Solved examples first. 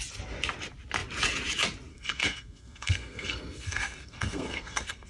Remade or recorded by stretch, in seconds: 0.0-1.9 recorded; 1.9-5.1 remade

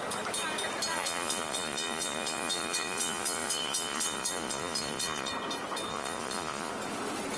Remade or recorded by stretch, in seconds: 0.0-0.9 recorded; 0.9-5.3 remade; 5.3-5.9 recorded; 5.9-6.7 remade; 6.7-7.4 recorded

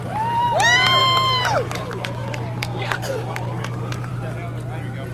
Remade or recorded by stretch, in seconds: 0.0-1.0 recorded; 1.0-4.1 remade; 4.1-5.1 recorded

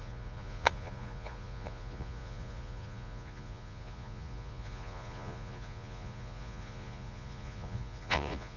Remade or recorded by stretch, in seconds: 0.0-8.6 remade

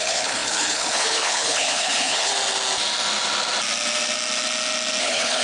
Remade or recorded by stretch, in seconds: 0.0-2.3 remade; 2.3-5.0 recorded; 5.0-5.4 remade

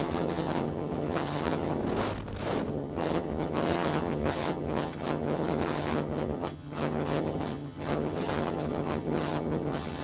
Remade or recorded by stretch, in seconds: 0.0-1.8 remade; 1.8-2.7 recorded; 2.7-10.0 remade

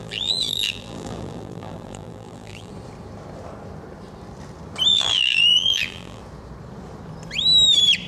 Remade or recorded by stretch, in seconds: 0.0-2.7 remade; 2.7-4.9 recorded; 4.9-6.2 remade; 6.2-8.1 recorded

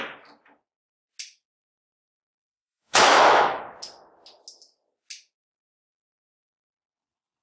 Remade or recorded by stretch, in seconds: 0.0-2.4 recorded; 2.4-3.6 remade; 3.6-7.4 recorded